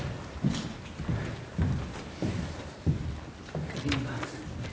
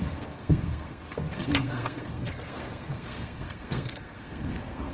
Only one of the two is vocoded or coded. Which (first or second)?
second